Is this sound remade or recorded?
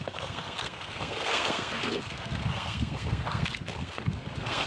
remade